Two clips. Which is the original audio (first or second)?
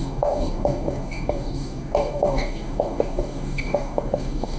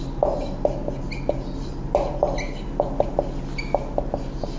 second